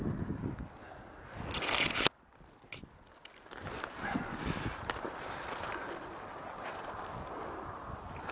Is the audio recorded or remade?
recorded